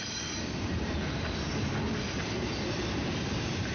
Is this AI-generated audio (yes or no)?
yes